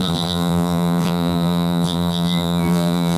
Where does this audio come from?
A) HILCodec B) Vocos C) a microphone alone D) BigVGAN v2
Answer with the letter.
D